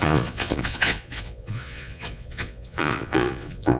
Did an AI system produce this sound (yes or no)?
yes